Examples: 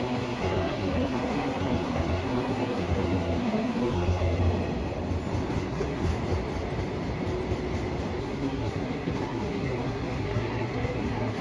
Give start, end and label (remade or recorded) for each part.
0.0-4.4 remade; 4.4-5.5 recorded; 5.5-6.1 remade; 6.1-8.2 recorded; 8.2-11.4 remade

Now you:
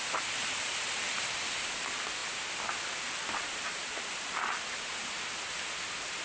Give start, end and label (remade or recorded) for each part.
0.0-6.2 recorded

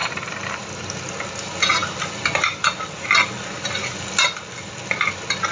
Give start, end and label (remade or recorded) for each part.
0.0-5.5 recorded

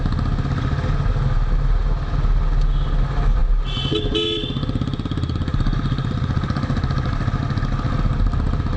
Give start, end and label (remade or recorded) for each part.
0.0-8.8 recorded